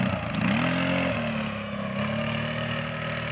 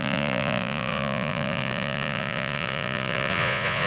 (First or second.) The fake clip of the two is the second